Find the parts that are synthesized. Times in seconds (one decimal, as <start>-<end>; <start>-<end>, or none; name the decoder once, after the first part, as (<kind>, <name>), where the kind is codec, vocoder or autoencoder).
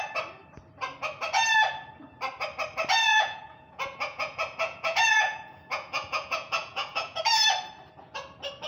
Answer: 3.1-7.2 (vocoder, Vocos)